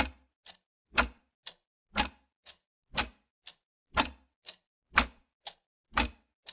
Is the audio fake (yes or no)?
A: no